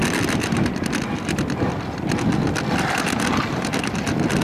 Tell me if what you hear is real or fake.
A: real